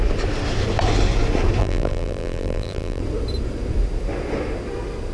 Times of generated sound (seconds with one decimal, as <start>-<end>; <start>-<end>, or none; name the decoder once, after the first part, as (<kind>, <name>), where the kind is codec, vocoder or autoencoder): 1.6-3.0 (vocoder, BigVGAN v2)